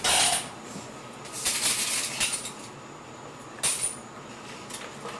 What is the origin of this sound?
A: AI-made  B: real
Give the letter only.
B